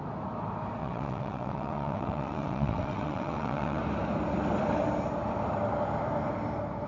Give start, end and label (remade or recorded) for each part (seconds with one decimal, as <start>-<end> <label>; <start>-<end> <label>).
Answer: 0.0-0.8 recorded; 0.8-3.8 remade; 3.8-6.9 recorded